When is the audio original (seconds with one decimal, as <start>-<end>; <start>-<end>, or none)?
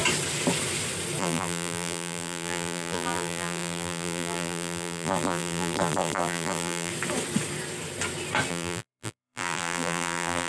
0.0-1.2; 6.9-8.5